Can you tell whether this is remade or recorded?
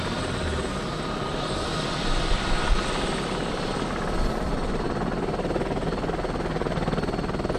recorded